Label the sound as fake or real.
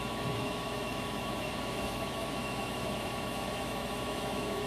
fake